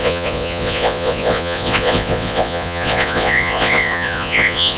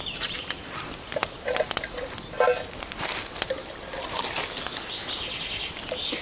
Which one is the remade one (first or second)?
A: first